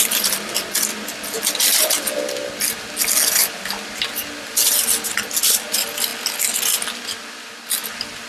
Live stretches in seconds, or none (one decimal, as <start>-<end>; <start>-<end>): 0.0-8.3